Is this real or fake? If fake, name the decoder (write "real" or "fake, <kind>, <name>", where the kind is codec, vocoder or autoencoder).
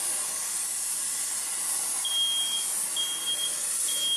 real